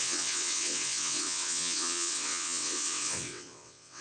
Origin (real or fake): fake